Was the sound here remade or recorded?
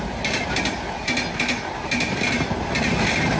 recorded